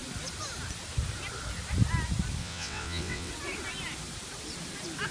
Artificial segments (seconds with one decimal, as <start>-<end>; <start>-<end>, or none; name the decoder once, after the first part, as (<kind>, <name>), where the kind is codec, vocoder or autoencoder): 2.4-3.3 (vocoder, WaveNeXt)